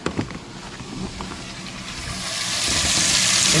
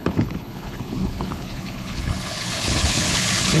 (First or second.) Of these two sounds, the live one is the first